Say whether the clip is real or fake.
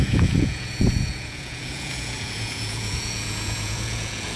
fake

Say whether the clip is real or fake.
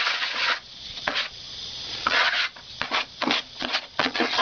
fake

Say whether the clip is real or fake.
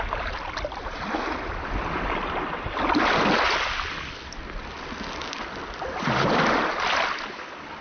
real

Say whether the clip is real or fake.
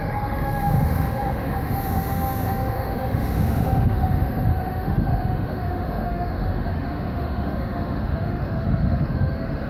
fake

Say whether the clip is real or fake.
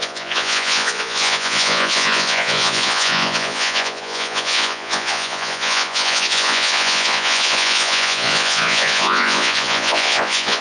fake